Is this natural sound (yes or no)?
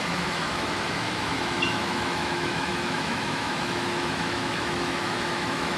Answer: no